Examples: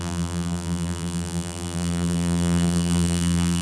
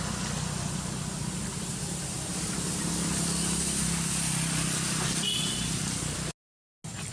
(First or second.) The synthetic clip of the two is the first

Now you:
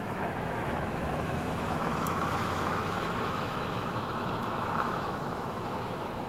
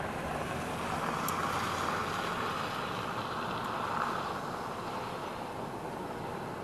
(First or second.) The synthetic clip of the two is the first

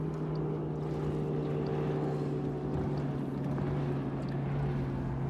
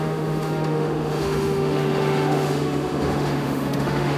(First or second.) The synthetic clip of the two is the second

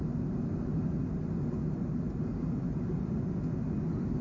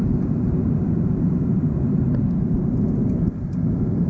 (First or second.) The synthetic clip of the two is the second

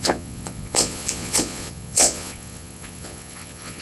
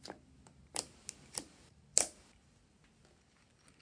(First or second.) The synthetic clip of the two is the first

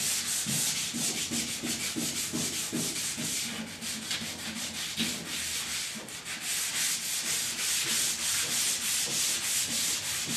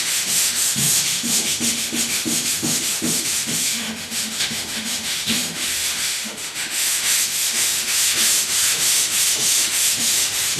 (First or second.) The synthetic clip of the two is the second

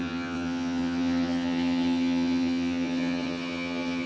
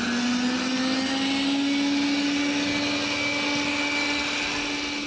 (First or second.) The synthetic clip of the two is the first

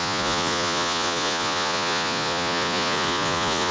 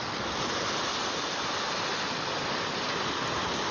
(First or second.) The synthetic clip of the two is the first